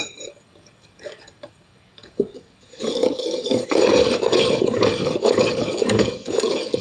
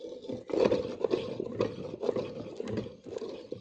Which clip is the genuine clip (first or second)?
second